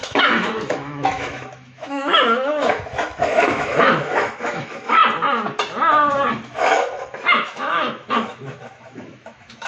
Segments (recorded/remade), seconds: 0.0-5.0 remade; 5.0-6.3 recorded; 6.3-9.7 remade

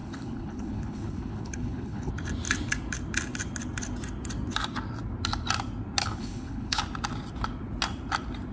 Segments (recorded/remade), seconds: 0.0-2.1 remade; 2.1-6.0 recorded; 6.0-6.8 remade; 6.8-8.5 recorded

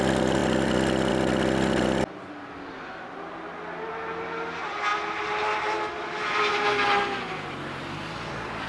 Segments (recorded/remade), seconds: 0.0-8.7 recorded

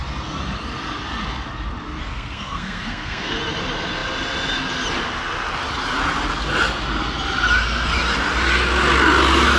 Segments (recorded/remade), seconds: 0.0-2.0 recorded; 2.0-3.4 remade; 3.4-9.6 recorded

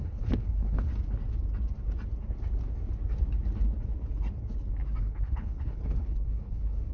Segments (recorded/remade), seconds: 0.0-0.9 remade; 0.9-5.0 recorded; 5.0-6.9 remade

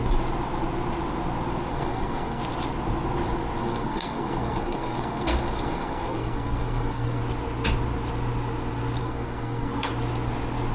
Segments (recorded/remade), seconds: 0.0-1.7 recorded; 1.7-2.4 remade; 2.4-3.6 recorded; 3.6-7.2 remade; 7.2-9.0 recorded; 9.0-9.9 remade; 9.9-10.7 recorded

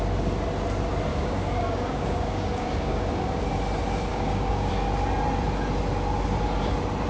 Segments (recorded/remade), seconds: 0.0-1.1 recorded; 1.1-3.1 remade; 3.1-4.1 recorded; 4.1-4.7 remade; 4.7-7.1 recorded